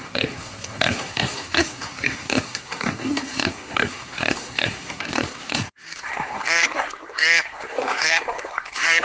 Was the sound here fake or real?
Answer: fake